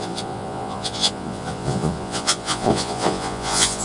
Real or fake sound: fake